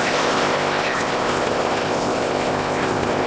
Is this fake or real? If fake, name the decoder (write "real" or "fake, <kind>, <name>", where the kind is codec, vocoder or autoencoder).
fake, codec, ZipCodec